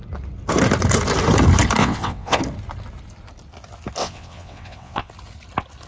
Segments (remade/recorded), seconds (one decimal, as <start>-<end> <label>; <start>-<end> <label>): 0.0-1.8 recorded; 1.8-2.4 remade; 2.4-4.0 recorded; 4.0-5.1 remade; 5.1-5.9 recorded